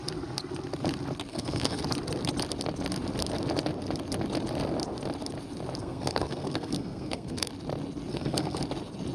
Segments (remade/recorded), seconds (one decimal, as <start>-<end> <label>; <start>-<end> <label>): 0.0-1.3 recorded; 1.3-1.8 remade; 1.8-5.8 recorded; 5.8-7.5 remade; 7.5-8.1 recorded; 8.1-8.6 remade; 8.6-9.1 recorded